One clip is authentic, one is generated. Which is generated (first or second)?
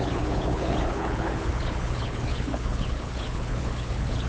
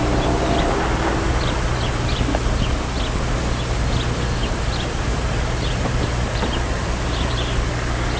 first